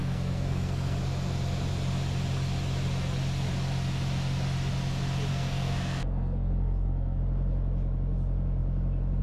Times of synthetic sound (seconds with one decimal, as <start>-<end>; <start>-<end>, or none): 0.0-1.0; 5.3-7.2